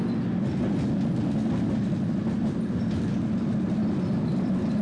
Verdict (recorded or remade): recorded